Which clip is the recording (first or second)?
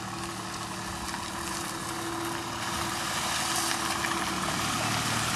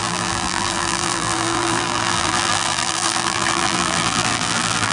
first